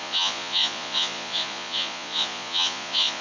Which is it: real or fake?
fake